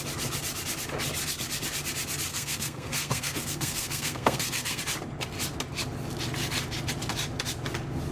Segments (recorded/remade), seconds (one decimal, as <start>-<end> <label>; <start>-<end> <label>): 0.0-2.3 recorded; 2.3-4.8 remade; 4.8-8.1 recorded